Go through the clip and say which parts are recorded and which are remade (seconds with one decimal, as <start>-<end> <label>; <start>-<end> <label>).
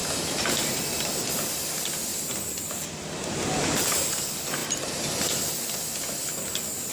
0.0-1.3 remade; 1.3-4.6 recorded; 4.6-5.5 remade; 5.5-6.9 recorded